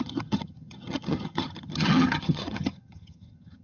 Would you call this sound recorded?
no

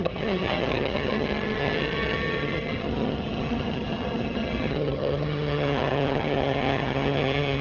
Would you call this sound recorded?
no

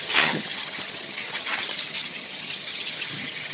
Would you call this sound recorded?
no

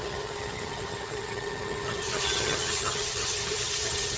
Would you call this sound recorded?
no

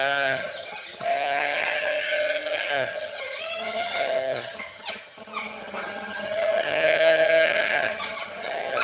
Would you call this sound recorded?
no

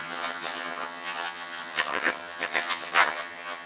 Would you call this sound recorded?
no